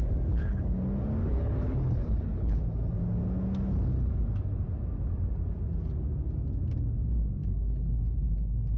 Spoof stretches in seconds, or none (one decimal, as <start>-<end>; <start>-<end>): 1.3-2.6; 7.4-8.8